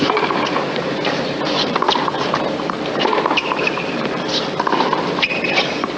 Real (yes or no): no